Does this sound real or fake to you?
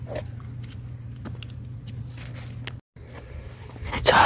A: real